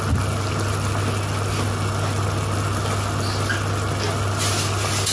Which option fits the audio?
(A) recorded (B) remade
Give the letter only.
A